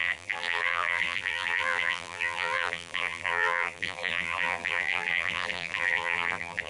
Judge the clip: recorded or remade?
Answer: remade